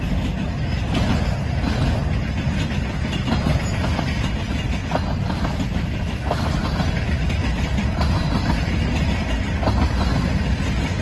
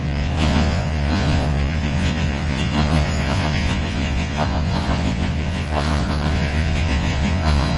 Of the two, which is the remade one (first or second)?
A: second